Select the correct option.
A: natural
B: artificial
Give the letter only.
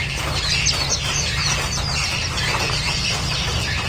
A